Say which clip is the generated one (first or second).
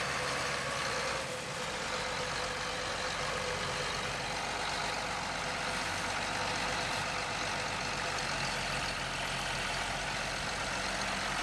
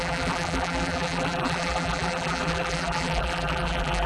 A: second